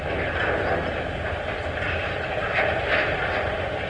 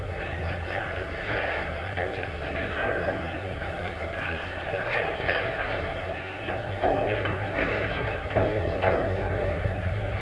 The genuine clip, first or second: first